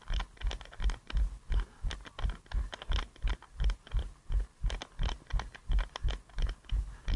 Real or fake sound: real